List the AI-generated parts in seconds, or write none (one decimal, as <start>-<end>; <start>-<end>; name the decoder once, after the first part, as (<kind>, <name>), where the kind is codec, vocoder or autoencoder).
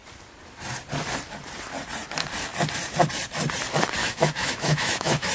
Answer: 4.0-5.3 (autoencoder, DAC-VAE)